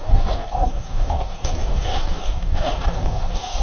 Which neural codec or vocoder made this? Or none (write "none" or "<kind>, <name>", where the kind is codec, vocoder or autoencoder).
codec, DAC